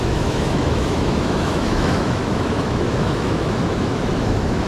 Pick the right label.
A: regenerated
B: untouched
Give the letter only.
A